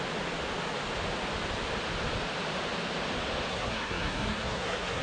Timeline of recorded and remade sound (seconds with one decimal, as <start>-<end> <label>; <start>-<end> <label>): 0.0-3.5 recorded; 3.5-5.0 remade